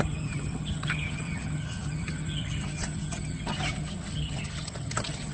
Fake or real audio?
fake